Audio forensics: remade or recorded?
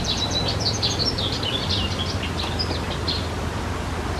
recorded